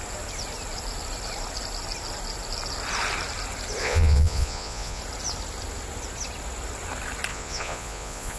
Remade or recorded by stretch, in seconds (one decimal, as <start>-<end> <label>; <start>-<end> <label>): 0.0-3.8 recorded; 3.8-5.0 remade; 5.0-7.3 recorded; 7.3-8.4 remade